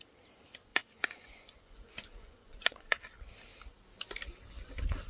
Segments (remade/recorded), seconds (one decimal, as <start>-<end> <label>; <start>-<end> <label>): 0.0-0.7 recorded; 0.7-3.0 remade; 3.0-5.1 recorded

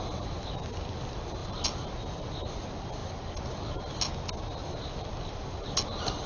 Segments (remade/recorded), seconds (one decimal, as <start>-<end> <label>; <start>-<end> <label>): 0.0-6.3 recorded

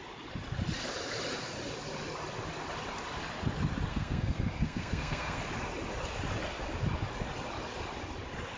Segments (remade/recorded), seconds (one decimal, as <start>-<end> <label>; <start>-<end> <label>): 0.0-3.9 recorded; 3.9-5.4 remade; 5.4-8.6 recorded